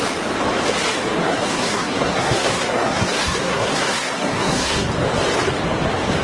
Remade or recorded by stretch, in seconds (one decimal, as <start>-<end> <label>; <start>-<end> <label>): 0.0-1.2 recorded; 1.2-4.9 remade; 4.9-6.2 recorded